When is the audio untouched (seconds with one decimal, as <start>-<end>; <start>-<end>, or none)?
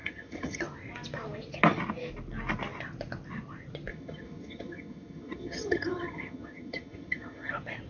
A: 0.6-3.9; 7.5-7.9